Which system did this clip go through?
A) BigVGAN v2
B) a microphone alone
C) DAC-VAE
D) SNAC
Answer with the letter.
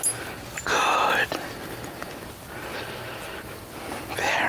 B